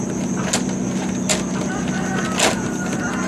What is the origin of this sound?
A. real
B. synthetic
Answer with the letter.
A